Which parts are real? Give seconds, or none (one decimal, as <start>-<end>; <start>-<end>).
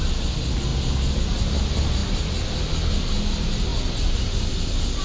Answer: 0.0-5.0